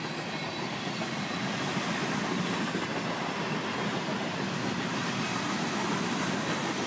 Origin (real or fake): real